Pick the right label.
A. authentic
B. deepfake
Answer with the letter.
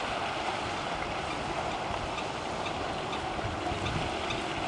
A